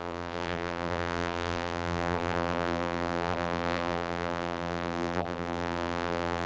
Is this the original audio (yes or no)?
no